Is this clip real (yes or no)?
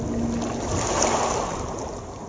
yes